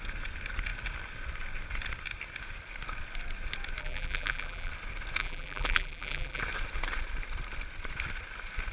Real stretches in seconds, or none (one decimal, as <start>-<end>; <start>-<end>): 0.0-3.8; 4.7-5.2; 6.4-8.7